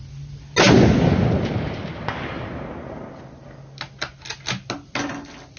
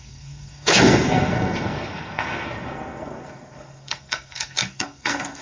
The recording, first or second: first